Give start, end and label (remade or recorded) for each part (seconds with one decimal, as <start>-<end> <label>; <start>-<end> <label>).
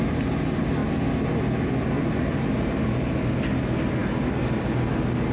0.0-5.3 recorded